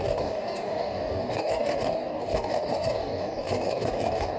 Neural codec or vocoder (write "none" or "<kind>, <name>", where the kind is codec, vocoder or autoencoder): codec, DAC